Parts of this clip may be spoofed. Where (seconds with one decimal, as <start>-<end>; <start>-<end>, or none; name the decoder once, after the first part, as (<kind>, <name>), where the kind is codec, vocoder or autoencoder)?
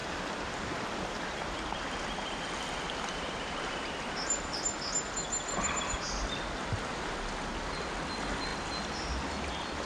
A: 0.0-4.7 (vocoder, BigVGAN v2)